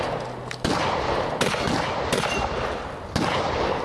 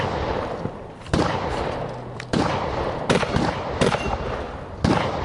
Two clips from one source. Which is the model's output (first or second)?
second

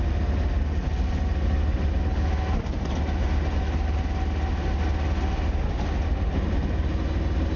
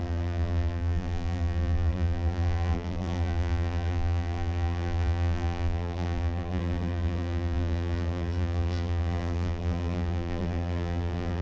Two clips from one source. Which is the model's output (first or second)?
second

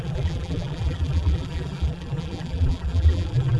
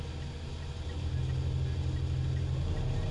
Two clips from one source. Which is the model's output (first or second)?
first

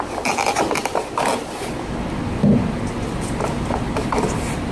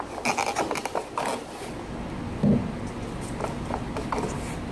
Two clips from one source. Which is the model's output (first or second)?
first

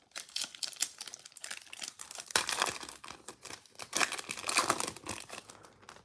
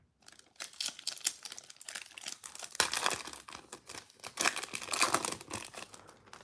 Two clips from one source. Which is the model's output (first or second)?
first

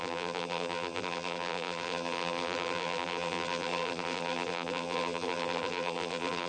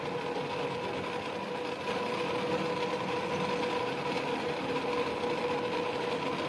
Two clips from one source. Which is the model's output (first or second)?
first